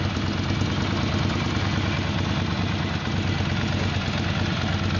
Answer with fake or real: real